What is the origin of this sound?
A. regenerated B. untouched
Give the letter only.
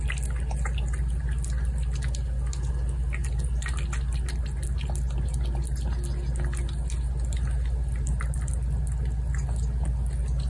B